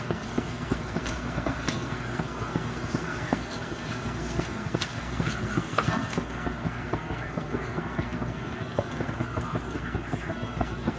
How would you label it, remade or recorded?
remade